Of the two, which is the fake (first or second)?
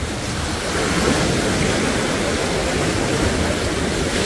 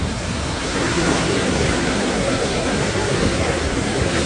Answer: second